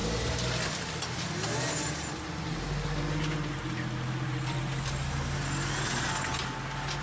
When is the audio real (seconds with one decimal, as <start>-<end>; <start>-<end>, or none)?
0.0-7.0